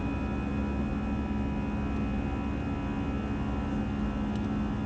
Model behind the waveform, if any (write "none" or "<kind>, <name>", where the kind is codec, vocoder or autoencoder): none